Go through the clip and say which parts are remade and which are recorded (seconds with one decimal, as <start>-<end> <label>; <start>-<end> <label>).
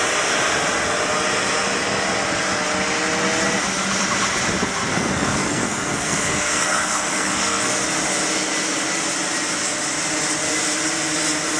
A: 0.0-4.9 recorded; 4.9-7.8 remade; 7.8-11.6 recorded